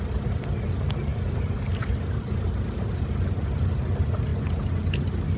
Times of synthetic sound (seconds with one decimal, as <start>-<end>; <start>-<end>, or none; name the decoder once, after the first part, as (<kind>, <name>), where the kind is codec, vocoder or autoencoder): 1.1-3.1 (vocoder, BigVGAN v2)